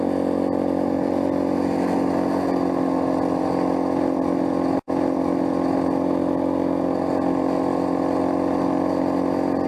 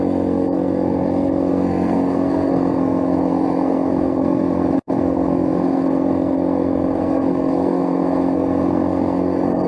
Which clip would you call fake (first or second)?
second